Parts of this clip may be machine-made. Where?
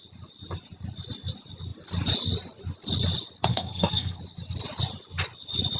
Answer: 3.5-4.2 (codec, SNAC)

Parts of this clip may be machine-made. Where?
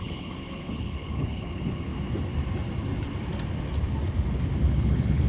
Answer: 0.0-1.9 (codec, HILCodec); 4.7-5.3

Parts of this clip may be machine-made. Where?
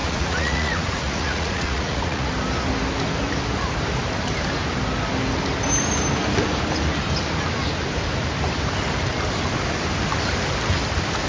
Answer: 0.0-2.3 (vocoder, Vocos)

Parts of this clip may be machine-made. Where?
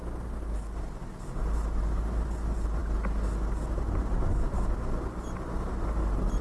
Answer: none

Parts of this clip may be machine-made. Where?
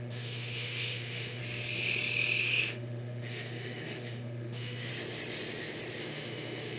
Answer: 0.0-1.4 (autoencoder, DAC-VAE); 2.4-4.9; 6.0-6.8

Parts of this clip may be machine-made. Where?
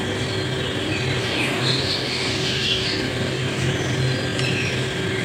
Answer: 1.2-3.7 (codec, DAC)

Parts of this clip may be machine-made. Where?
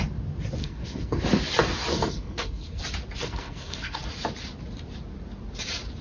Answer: 0.6-1.2 (codec, SNAC); 1.9-2.8; 3.2-4.0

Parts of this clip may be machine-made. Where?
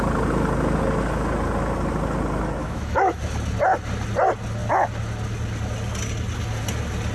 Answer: 2.6-3.2 (autoencoder, DAC-VAE)